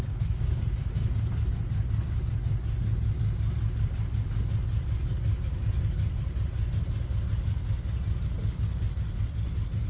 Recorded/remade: recorded